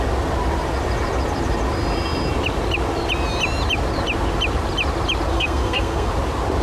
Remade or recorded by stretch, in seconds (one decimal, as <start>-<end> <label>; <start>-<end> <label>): 0.0-5.3 recorded; 5.3-6.1 remade; 6.1-6.6 recorded